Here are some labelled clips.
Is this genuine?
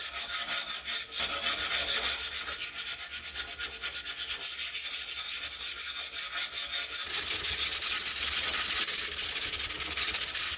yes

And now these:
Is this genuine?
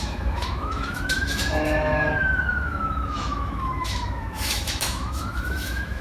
no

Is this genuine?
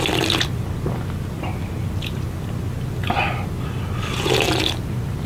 yes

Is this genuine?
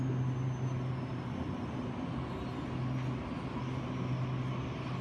yes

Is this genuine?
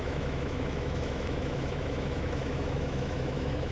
no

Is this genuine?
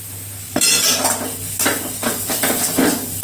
yes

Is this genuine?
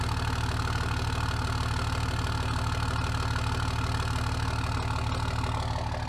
yes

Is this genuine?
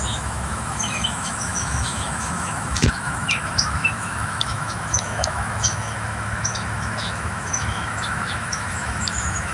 no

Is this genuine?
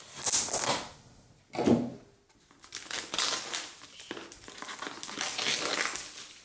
yes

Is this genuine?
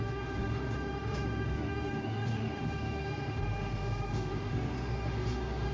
no